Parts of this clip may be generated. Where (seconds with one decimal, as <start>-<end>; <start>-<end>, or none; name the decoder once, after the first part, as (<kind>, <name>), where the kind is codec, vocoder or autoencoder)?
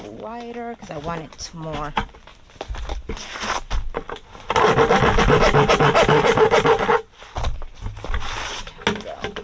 none